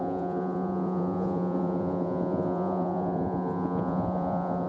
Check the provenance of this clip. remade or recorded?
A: remade